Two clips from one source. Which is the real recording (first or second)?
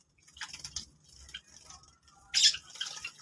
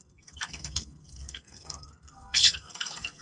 first